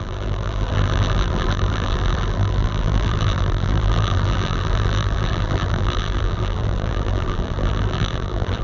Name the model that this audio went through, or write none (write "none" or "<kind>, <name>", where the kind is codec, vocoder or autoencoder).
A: vocoder, BigVGAN v2